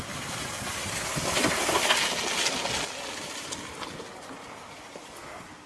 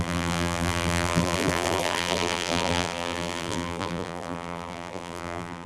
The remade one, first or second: second